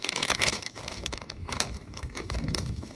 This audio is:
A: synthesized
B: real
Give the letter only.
A